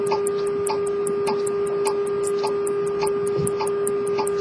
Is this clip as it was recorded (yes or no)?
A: yes